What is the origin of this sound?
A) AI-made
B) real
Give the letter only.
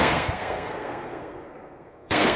A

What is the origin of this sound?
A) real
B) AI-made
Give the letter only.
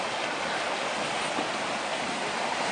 A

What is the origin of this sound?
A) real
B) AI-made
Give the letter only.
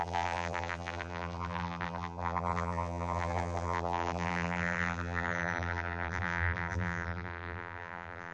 B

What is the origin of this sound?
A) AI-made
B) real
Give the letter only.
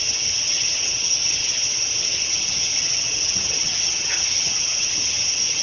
A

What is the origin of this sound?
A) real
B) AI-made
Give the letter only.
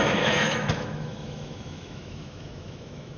B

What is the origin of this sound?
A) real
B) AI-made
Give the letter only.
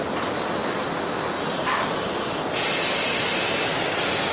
A